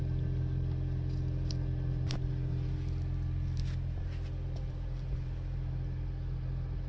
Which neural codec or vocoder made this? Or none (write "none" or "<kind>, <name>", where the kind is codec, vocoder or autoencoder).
none